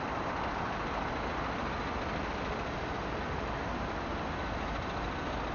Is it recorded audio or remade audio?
recorded